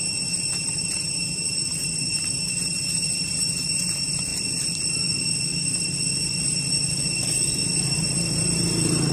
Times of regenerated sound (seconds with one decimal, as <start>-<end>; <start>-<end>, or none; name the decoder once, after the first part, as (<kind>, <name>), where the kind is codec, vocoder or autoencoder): 0.0-4.3 (vocoder, BigVGAN v2); 7.8-9.1